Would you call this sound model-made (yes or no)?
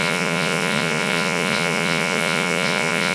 yes